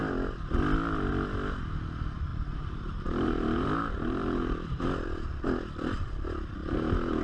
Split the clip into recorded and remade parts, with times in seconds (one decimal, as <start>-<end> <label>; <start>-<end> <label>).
0.0-2.3 recorded; 2.3-4.8 remade; 4.8-6.6 recorded; 6.6-7.2 remade